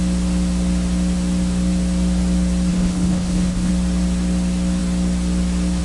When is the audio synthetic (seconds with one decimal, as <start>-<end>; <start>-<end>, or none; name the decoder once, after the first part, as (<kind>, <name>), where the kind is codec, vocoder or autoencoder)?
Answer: 2.7-3.7 (codec, HILCodec)